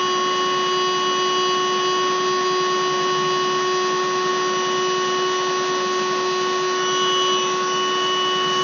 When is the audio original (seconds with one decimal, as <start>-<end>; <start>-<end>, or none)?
0.0-8.6